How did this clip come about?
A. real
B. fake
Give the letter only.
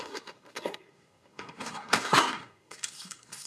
B